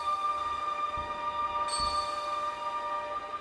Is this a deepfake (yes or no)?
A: no